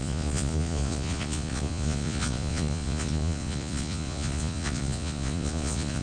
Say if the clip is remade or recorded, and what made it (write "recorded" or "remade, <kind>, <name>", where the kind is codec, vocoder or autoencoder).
remade, vocoder, Vocos